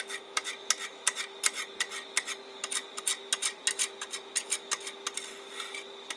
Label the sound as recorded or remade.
recorded